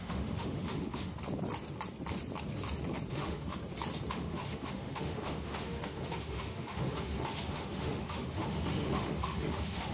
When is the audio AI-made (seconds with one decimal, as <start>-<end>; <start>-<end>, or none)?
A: 0.0-1.1; 3.1-3.6; 4.1-9.9

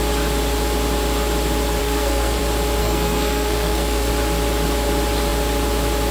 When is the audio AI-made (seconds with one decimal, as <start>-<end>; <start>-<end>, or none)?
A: 1.8-2.4; 2.8-4.1

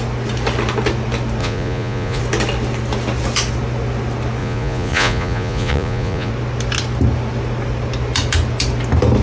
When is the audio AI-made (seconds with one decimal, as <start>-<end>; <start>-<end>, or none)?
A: 1.4-2.2; 4.4-6.3

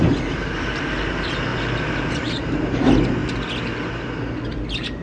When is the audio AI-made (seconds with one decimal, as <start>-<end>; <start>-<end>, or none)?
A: 1.5-2.8

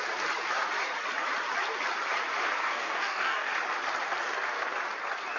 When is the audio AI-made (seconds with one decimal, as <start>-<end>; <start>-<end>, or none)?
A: 2.6-3.5

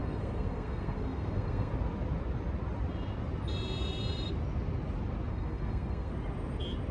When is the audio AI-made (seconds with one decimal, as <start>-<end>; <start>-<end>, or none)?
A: 0.0-1.7; 5.3-6.1

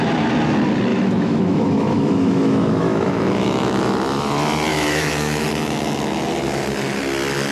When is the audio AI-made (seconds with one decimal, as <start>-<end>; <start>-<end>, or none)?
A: 0.9-3.8; 4.7-5.5